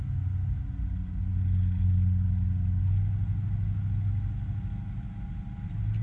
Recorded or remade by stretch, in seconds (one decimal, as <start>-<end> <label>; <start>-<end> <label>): 0.0-6.0 recorded